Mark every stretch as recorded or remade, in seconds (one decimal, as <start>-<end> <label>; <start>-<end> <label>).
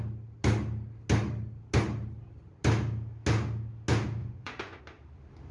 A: 0.0-4.2 recorded; 4.2-4.8 remade; 4.8-5.5 recorded